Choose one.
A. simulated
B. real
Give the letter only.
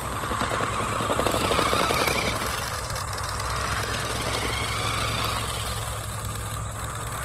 B